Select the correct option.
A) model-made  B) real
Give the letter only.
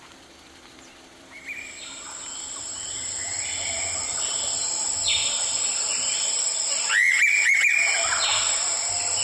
A